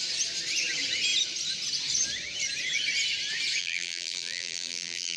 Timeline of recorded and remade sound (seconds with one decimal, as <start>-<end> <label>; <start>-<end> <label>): 0.0-3.6 recorded; 3.6-5.2 remade